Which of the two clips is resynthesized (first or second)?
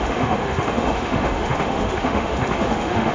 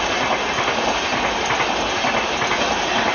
first